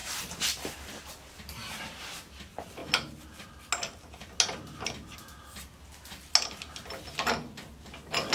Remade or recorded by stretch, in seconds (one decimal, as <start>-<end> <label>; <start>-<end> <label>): 0.0-0.7 remade; 0.7-8.3 recorded